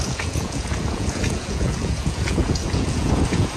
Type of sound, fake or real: fake